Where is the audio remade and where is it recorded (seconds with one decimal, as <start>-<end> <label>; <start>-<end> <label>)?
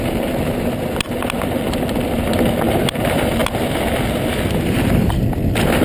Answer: 0.0-5.8 recorded